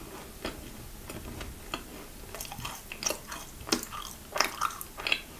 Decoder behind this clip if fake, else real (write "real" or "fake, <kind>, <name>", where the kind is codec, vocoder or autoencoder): real